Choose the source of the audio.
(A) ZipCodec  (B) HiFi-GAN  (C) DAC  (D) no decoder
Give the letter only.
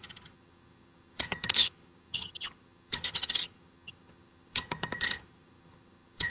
B